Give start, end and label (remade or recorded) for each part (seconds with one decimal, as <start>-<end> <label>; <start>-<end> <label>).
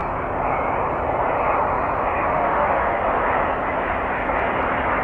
0.0-2.3 recorded; 2.3-3.0 remade; 3.0-5.0 recorded